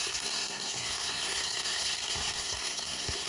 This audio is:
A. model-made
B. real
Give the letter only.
A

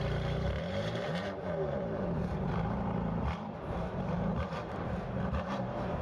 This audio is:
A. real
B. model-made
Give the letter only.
B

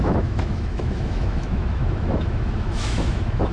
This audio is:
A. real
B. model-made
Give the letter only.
B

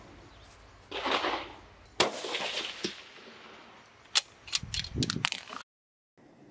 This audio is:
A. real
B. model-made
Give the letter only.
A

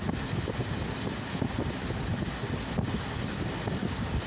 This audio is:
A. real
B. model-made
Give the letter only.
A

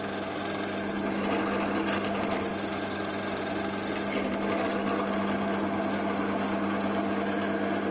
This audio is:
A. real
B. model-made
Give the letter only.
A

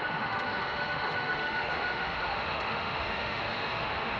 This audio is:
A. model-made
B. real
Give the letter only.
A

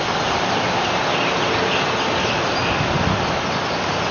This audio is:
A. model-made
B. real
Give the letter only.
B